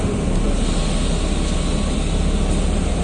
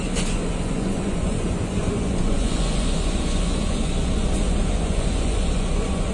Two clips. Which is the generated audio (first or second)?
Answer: second